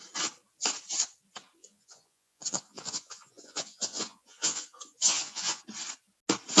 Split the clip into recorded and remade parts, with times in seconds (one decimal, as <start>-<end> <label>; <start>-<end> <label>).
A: 0.0-1.6 recorded; 1.6-5.6 remade; 5.6-6.6 recorded